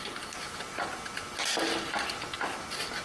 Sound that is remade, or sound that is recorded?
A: recorded